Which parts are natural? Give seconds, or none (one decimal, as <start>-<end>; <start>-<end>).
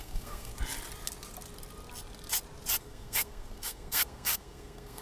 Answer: 0.5-2.8